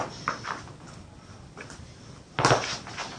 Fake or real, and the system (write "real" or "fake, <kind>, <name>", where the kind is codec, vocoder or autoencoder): real